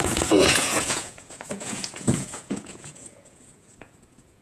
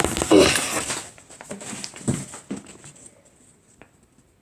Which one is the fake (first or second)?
first